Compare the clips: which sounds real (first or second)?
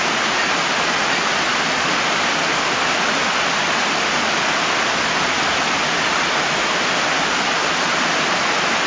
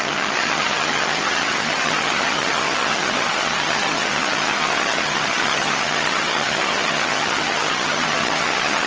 first